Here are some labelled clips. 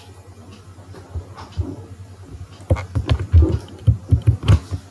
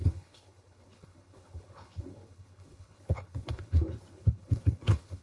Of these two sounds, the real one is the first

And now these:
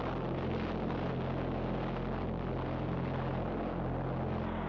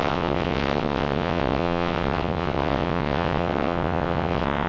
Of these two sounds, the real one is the first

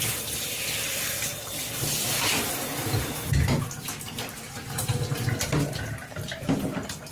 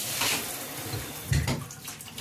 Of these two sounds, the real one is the first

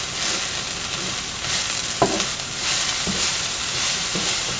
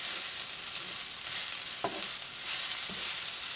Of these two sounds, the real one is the first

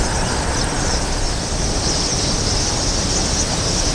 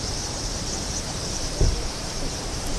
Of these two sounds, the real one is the first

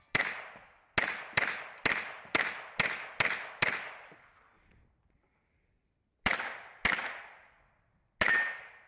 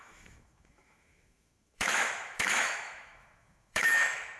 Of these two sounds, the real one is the first